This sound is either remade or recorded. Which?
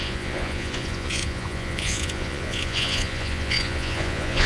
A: remade